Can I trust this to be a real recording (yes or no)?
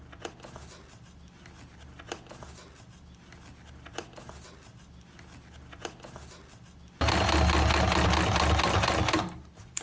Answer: yes